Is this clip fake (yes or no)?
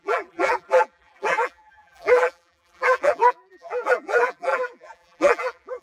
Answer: yes